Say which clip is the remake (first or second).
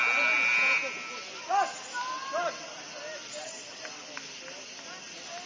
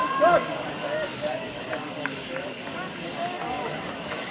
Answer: second